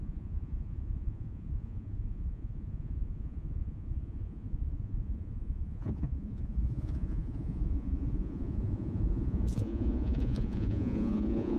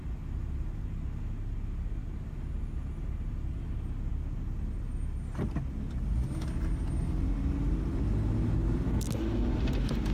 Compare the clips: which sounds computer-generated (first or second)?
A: first